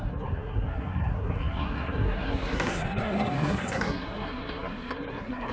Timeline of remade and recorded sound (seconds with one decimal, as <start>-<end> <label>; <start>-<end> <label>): 0.0-5.5 remade